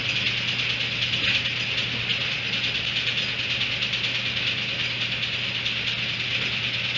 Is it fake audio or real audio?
real